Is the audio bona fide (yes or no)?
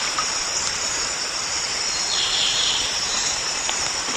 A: no